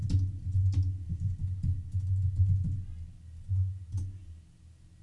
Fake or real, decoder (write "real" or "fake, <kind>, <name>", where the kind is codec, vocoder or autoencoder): real